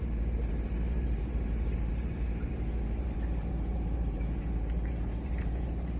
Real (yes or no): no